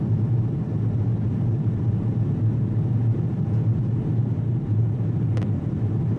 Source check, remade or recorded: recorded